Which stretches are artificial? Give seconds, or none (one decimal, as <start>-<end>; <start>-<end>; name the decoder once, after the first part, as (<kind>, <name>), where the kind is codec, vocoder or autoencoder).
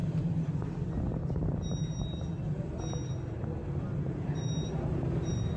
0.0-0.5 (vocoder, BigVGAN v2); 3.6-5.6